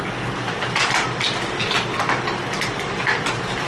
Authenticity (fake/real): real